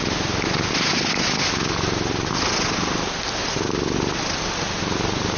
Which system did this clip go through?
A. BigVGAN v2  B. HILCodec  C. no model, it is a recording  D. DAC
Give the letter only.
C